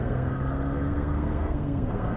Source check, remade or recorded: remade